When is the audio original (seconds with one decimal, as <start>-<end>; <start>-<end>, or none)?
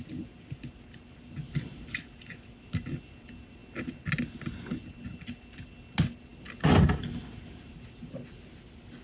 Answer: 0.0-9.0